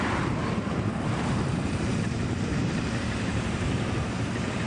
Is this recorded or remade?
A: remade